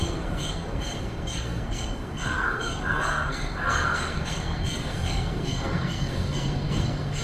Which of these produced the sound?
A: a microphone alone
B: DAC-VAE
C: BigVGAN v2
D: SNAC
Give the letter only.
D